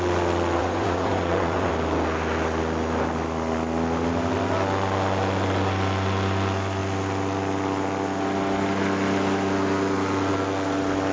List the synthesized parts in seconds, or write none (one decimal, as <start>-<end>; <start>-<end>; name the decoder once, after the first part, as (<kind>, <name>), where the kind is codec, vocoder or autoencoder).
0.6-1.7 (vocoder, Vocos)